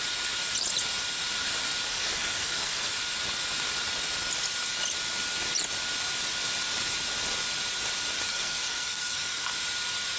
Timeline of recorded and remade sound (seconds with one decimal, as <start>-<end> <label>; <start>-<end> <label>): 0.0-1.9 recorded; 1.9-2.9 remade; 2.9-8.3 recorded; 8.3-9.5 remade; 9.5-10.2 recorded